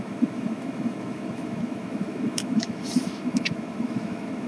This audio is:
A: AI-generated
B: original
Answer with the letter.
A